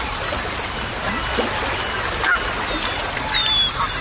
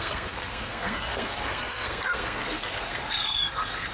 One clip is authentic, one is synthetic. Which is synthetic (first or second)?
second